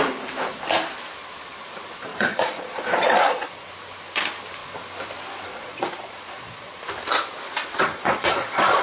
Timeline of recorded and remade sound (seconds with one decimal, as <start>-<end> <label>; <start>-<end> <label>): 0.0-2.1 recorded; 2.1-3.7 remade; 3.7-5.5 recorded; 5.5-6.8 remade; 6.8-7.9 recorded; 7.9-8.8 remade